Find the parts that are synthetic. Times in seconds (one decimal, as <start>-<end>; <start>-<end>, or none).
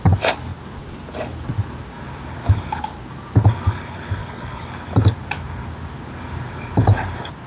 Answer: 4.2-4.7